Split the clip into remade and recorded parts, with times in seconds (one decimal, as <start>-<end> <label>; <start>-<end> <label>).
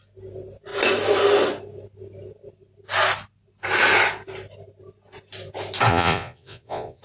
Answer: 0.0-5.9 recorded; 5.9-7.0 remade